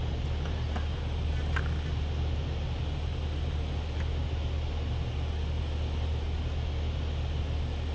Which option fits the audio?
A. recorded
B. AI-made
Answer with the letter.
A